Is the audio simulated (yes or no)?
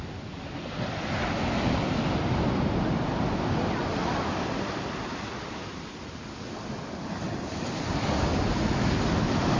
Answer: no